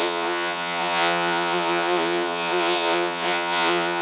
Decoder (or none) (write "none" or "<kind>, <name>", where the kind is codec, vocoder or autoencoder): vocoder, Vocos